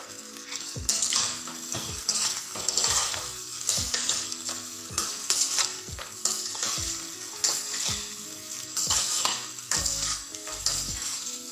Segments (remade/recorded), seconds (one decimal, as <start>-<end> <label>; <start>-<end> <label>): 0.0-11.5 remade